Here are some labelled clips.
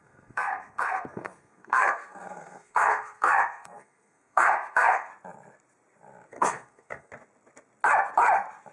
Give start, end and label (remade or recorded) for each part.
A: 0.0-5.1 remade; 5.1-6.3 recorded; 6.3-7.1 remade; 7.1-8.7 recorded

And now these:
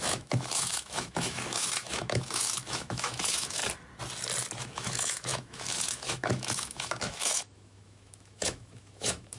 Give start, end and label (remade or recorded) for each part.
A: 0.0-3.6 remade; 3.6-4.6 recorded; 4.6-9.4 remade

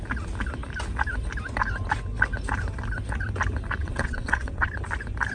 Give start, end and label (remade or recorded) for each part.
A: 0.0-3.8 recorded; 3.8-4.7 remade; 4.7-5.3 recorded